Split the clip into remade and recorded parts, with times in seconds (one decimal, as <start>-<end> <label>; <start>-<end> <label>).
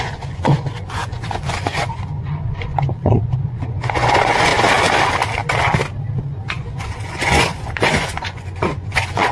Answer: 0.0-4.5 remade; 4.5-6.2 recorded; 6.2-9.3 remade